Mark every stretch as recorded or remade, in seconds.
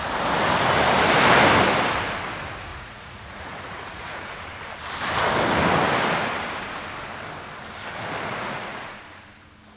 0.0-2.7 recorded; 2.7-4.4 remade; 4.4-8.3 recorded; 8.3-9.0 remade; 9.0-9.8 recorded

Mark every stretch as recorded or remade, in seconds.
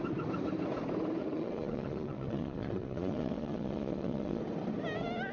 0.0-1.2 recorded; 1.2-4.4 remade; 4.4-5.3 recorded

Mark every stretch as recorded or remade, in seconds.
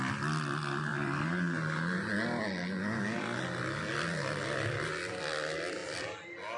0.0-6.6 recorded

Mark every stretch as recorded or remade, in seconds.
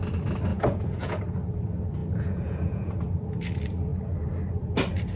0.0-0.5 recorded; 0.5-1.2 remade; 1.2-2.0 recorded; 2.0-2.9 remade; 2.9-5.2 recorded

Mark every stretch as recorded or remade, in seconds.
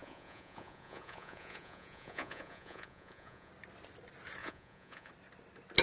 0.0-3.5 remade; 3.5-4.4 recorded; 4.4-5.1 remade; 5.1-5.8 recorded